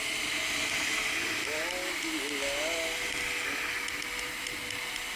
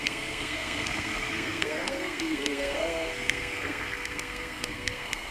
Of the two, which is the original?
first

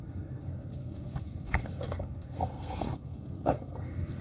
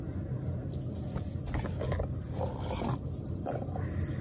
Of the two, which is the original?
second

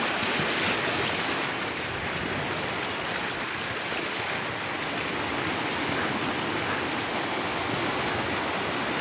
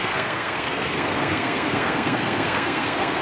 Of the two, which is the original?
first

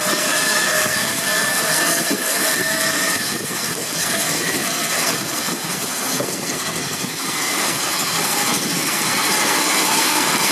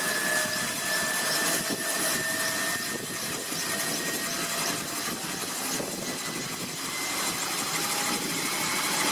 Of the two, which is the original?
second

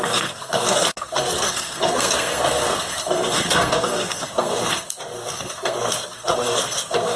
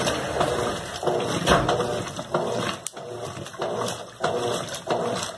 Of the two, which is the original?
second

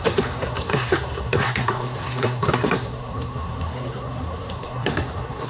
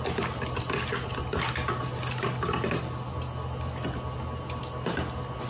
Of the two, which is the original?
second